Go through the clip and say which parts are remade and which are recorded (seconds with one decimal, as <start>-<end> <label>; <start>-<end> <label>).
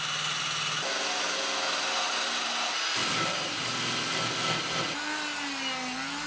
0.0-6.3 recorded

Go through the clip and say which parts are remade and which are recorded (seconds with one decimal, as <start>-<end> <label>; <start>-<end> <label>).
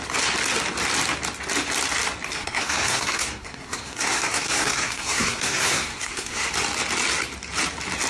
0.0-2.3 recorded; 2.3-6.5 remade; 6.5-8.1 recorded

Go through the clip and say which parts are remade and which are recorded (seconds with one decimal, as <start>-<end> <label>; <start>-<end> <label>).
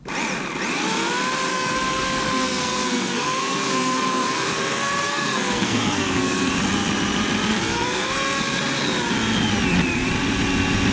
0.0-1.5 recorded; 1.5-6.5 remade; 6.5-7.5 recorded; 7.5-8.6 remade; 8.6-10.9 recorded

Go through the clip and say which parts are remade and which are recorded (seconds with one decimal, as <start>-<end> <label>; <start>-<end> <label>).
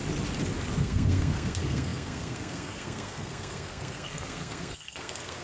0.0-0.8 recorded; 0.8-5.4 remade